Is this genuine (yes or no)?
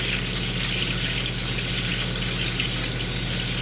yes